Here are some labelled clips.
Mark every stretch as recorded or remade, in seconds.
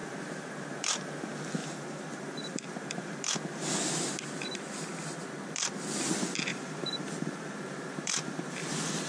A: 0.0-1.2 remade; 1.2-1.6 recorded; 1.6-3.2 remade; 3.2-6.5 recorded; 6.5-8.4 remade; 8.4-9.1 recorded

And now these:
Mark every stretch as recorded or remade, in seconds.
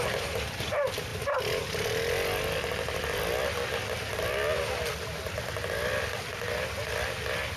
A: 0.0-7.6 recorded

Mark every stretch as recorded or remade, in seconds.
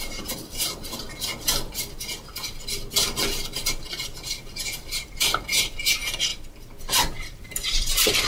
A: 0.0-1.3 remade; 1.3-4.8 recorded; 4.8-6.3 remade; 6.3-6.9 recorded; 6.9-8.3 remade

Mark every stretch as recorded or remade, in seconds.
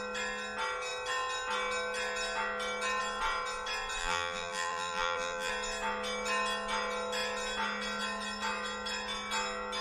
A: 0.0-4.0 recorded; 4.0-5.5 remade; 5.5-9.8 recorded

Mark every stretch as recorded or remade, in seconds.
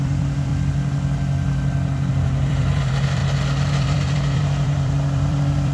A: 0.0-0.5 remade; 0.5-2.1 recorded; 2.1-3.2 remade; 3.2-3.7 recorded; 3.7-5.7 remade